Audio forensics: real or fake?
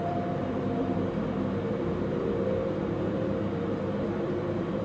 fake